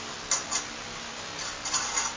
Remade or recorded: recorded